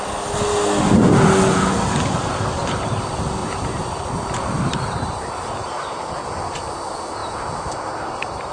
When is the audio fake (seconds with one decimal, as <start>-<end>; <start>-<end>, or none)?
3.4-5.7